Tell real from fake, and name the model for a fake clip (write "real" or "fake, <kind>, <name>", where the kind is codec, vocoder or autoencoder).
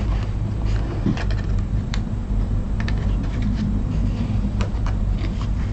fake, vocoder, BigVGAN v2